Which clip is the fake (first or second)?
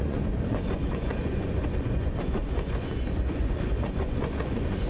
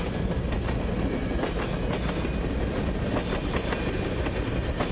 first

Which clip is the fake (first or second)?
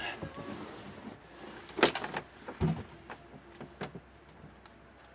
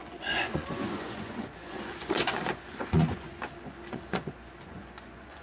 second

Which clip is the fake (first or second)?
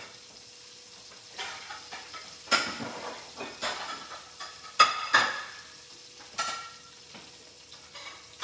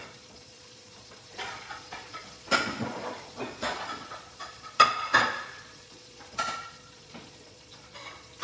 second